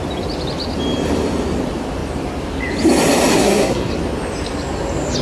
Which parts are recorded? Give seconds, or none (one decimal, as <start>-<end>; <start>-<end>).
0.0-3.3; 3.9-5.2